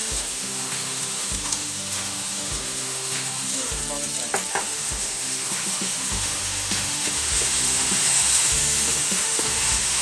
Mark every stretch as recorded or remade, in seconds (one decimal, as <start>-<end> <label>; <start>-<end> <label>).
0.0-3.8 remade; 3.8-4.5 recorded; 4.5-10.0 remade